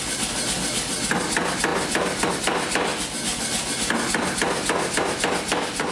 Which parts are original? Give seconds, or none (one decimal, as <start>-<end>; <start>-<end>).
0.0-5.9